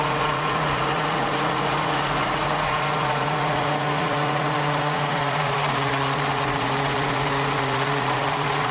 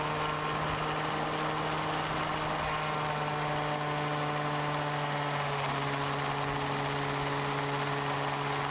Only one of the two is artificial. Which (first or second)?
first